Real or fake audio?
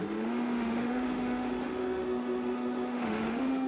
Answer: fake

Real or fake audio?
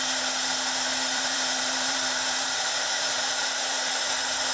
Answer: fake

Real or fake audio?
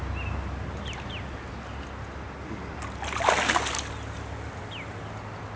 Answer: real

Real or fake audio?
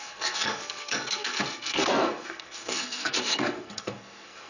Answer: fake